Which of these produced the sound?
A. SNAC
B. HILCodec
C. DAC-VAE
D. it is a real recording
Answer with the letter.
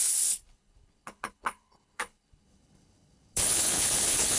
B